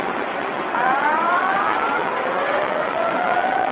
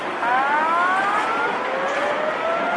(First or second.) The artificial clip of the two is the first